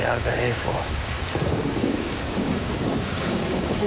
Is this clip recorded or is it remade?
remade